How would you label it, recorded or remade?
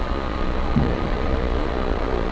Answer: remade